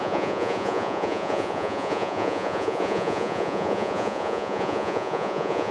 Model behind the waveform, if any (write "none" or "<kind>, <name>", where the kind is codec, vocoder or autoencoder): vocoder, Vocos